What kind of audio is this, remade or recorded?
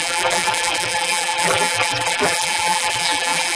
remade